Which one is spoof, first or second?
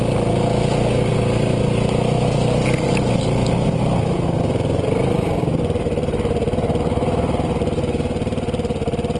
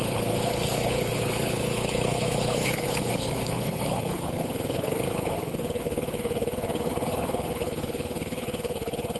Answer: second